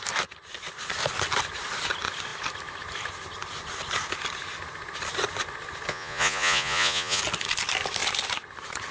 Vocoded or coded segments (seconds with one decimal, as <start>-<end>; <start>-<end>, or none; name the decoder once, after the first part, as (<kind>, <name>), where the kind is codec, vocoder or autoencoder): 5.9-7.2 (vocoder, Vocos)